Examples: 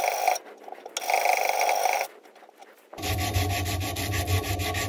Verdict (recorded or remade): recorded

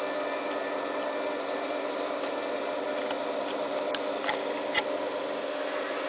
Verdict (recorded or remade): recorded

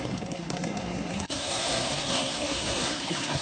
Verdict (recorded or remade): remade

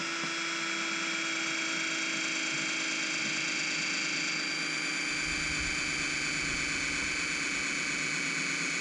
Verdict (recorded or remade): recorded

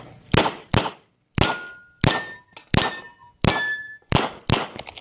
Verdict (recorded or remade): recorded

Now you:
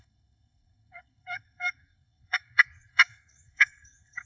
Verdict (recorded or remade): remade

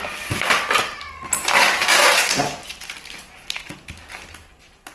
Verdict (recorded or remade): recorded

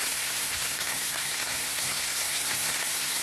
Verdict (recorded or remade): remade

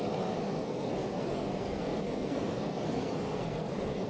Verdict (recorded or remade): remade